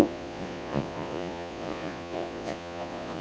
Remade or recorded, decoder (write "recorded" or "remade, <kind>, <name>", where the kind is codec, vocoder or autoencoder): remade, vocoder, Vocos